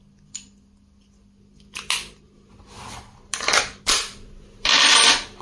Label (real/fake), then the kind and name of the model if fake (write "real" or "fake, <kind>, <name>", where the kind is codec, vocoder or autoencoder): real